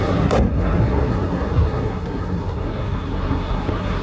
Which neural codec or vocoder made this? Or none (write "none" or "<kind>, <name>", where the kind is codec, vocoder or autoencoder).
codec, SNAC